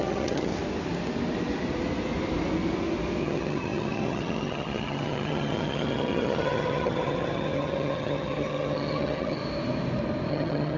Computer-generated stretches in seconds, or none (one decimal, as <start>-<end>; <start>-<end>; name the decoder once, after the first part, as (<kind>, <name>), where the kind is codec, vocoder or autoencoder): 0.0-0.5 (vocoder, HiFi-GAN); 3.2-9.4; 10.3-10.8